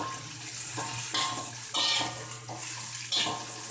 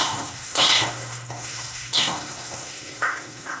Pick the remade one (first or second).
second